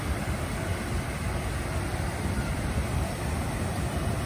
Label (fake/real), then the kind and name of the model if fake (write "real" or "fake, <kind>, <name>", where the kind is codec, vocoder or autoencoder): fake, vocoder, BigVGAN v2